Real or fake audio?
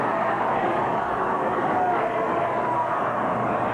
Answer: fake